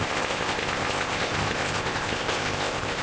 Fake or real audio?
fake